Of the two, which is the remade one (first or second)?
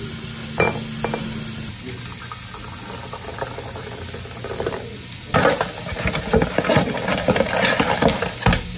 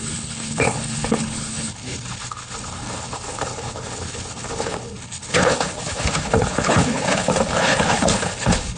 second